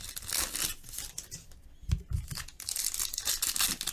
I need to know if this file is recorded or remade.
recorded